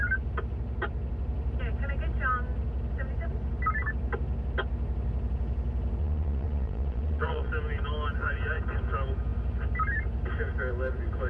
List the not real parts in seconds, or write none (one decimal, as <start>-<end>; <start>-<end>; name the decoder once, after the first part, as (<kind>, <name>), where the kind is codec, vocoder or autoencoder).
6.0-7.5 (vocoder, Vocos)